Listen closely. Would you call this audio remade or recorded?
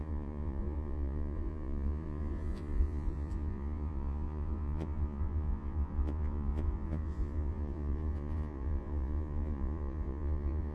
remade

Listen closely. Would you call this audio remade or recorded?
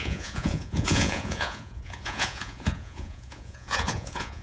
remade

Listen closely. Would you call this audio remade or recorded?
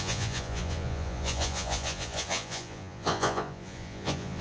remade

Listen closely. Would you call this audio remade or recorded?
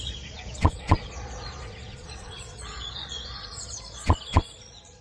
remade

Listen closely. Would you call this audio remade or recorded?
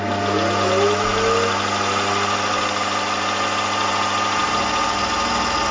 recorded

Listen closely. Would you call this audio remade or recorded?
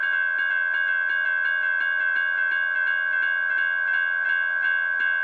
recorded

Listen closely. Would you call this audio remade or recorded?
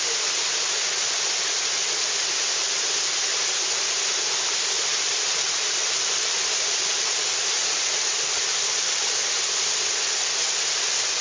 recorded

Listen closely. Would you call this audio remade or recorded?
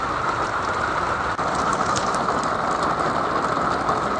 recorded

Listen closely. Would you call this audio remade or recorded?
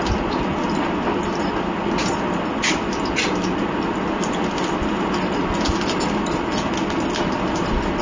recorded